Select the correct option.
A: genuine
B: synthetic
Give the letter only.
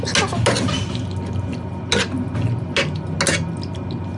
A